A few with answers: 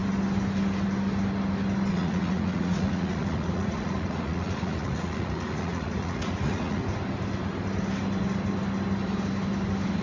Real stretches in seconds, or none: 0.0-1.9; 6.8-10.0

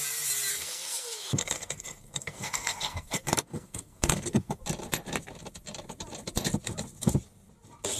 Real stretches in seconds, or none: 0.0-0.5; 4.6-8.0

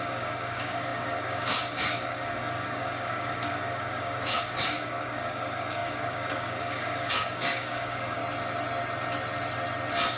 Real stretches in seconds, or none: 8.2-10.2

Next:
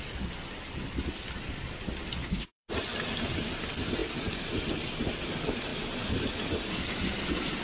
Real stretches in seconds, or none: 0.0-2.2; 2.7-7.6

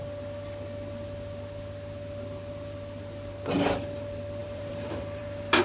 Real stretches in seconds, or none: 0.0-4.4